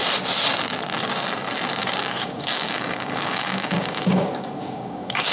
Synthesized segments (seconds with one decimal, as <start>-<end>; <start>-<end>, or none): 1.8-5.3